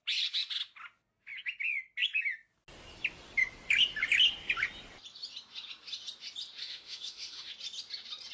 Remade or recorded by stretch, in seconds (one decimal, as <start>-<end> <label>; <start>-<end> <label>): 0.0-6.6 recorded; 6.6-7.5 remade; 7.5-8.3 recorded